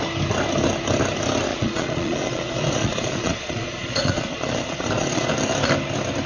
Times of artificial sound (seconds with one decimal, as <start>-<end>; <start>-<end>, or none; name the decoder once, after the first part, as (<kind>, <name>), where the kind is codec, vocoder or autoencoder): 1.5-5.3 (vocoder, Vocos)